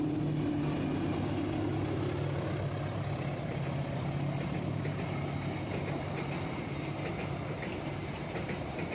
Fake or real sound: real